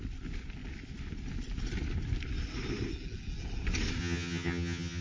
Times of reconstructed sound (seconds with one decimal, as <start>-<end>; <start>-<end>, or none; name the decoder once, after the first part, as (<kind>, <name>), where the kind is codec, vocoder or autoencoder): 4.0-5.0 (vocoder, HiFi-GAN)